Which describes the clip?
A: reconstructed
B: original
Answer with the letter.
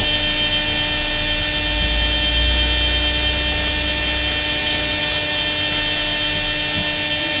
B